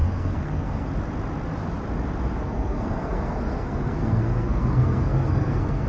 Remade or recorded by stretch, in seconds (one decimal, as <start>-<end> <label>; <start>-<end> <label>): 0.0-0.9 remade; 0.9-2.4 recorded; 2.4-5.9 remade